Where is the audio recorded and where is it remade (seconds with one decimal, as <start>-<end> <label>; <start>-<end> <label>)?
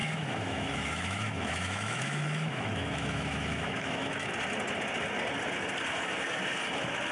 0.0-4.3 remade; 4.3-7.1 recorded